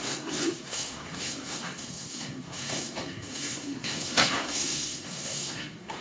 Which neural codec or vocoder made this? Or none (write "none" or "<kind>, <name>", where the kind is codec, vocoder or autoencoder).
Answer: codec, SNAC